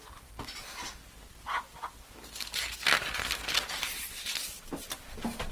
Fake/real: real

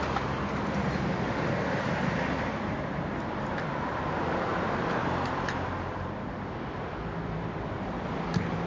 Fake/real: fake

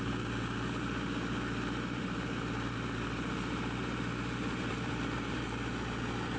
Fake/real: fake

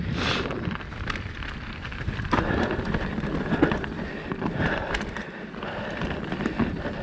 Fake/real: fake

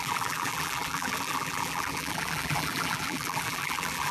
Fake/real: fake